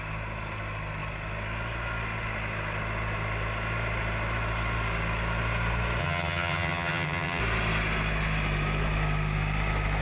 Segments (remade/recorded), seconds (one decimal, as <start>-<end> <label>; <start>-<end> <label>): 0.0-6.0 recorded; 6.0-7.4 remade; 7.4-10.0 recorded